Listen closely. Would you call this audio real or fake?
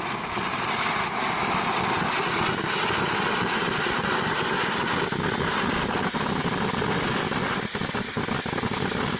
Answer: real